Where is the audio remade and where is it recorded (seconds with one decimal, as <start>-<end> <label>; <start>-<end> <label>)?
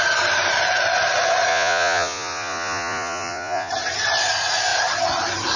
0.0-1.5 recorded; 1.5-3.7 remade; 3.7-5.6 recorded